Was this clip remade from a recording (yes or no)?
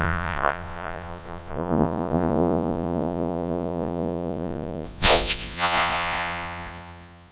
yes